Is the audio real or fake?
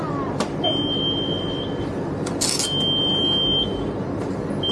real